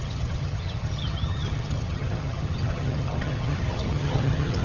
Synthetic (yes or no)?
yes